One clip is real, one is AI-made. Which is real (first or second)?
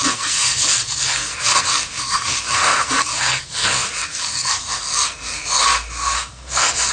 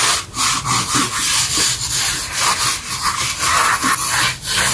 second